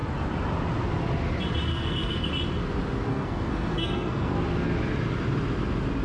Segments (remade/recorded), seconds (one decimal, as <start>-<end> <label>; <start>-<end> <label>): 0.0-1.7 recorded; 1.7-2.3 remade; 2.3-3.1 recorded; 3.1-4.3 remade; 4.3-6.0 recorded